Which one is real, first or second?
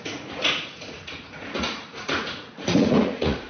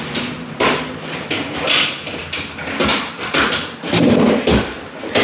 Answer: second